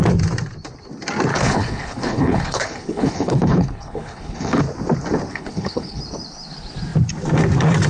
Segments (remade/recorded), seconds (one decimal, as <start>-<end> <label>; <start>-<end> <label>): 0.0-1.3 recorded; 1.3-4.6 remade; 4.6-5.3 recorded; 5.3-6.0 remade; 6.0-7.9 recorded